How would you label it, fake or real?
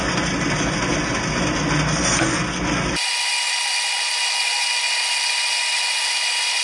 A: real